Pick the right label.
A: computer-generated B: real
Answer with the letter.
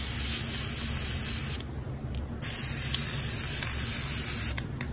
B